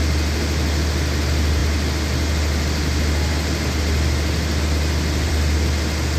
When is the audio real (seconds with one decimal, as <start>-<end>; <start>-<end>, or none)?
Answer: 0.0-6.2